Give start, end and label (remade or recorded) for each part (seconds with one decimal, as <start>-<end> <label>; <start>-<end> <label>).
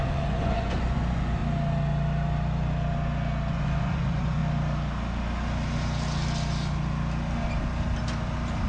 0.0-1.4 remade; 1.4-3.5 recorded; 3.5-4.4 remade; 4.4-8.7 recorded